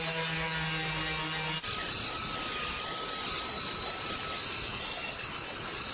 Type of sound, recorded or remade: recorded